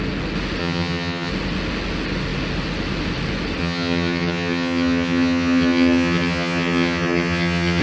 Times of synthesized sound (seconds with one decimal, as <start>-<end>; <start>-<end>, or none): 0.6-1.3; 3.6-7.8